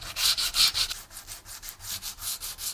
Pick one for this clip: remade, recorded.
recorded